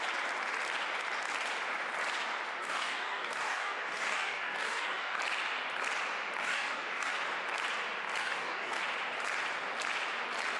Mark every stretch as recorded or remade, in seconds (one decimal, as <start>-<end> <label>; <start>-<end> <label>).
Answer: 0.0-2.6 recorded; 2.6-5.2 remade; 5.2-6.4 recorded; 6.4-7.1 remade; 7.1-8.2 recorded; 8.2-8.8 remade; 8.8-10.6 recorded